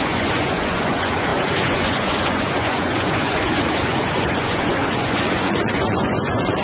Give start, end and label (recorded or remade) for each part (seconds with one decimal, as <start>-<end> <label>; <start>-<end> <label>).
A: 0.0-6.6 remade